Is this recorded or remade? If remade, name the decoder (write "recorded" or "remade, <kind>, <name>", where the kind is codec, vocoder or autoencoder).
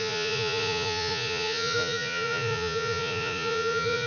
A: remade, vocoder, Vocos